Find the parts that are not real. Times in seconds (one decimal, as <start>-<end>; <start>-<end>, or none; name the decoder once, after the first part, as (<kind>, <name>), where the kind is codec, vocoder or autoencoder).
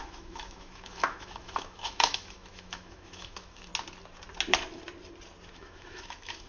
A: 0.0-3.7 (autoencoder, DAC-VAE); 5.5-6.5